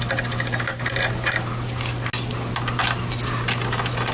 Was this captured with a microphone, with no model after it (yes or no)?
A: yes